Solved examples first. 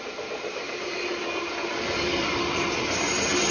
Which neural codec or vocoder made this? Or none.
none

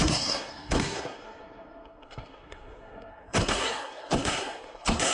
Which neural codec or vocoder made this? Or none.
codec, SNAC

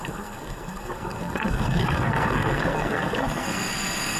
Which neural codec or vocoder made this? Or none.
codec, SNAC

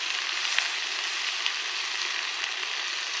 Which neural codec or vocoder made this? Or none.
none